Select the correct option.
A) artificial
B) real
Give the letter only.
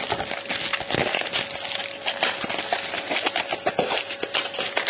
B